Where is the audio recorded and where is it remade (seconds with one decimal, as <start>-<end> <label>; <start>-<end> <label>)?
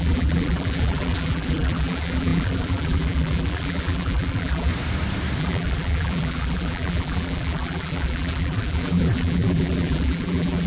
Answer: 0.0-4.7 remade; 4.7-5.4 recorded; 5.4-10.7 remade